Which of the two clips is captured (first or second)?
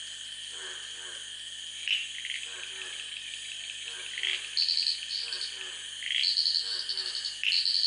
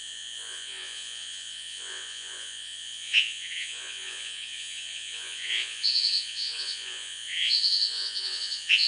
first